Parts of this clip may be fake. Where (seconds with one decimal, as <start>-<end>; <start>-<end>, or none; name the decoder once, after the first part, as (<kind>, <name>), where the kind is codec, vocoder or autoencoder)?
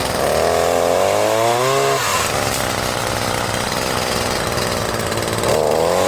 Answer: none